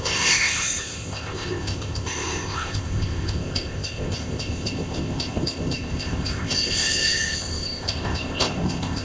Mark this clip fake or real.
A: fake